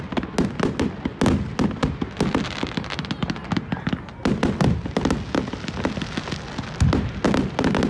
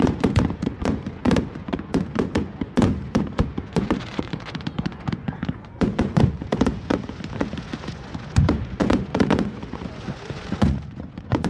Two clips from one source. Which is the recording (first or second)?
first